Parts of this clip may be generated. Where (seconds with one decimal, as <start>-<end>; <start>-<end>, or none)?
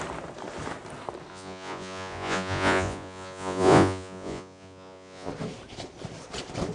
1.3-5.3